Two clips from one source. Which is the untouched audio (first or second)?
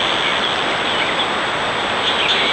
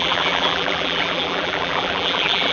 first